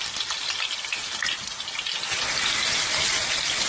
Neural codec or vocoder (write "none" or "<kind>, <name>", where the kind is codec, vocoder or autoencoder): none